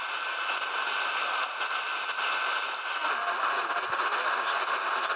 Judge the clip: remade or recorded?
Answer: recorded